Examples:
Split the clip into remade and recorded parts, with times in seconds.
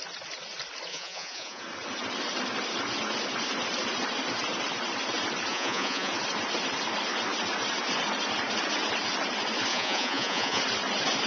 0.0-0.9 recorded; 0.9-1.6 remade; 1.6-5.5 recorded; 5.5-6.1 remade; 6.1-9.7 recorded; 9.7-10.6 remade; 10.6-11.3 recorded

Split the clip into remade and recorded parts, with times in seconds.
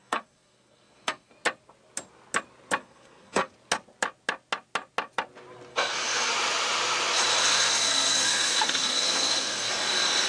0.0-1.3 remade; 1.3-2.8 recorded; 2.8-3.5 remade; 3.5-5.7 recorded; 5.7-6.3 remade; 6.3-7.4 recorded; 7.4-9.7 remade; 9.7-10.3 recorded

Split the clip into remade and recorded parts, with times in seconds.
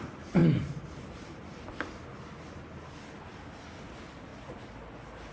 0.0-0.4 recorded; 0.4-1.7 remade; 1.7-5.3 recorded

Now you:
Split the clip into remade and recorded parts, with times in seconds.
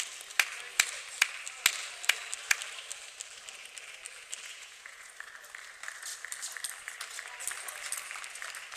0.0-4.5 recorded; 4.5-5.1 remade; 5.1-8.8 recorded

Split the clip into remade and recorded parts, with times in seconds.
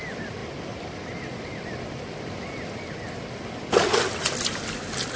0.0-5.2 recorded